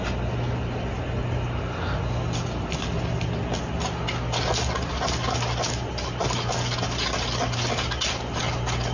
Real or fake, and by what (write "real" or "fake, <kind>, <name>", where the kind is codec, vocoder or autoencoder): real